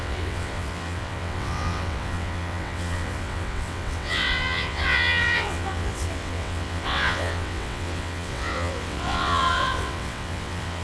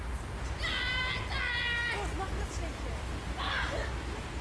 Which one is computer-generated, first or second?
first